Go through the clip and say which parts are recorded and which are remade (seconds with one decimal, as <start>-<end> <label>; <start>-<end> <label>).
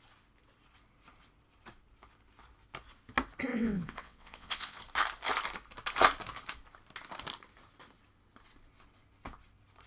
0.0-3.5 recorded; 3.5-4.8 remade; 4.8-9.9 recorded